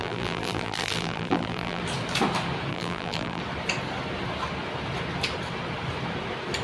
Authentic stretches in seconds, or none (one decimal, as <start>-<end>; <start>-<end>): 1.8-2.7; 3.4-6.6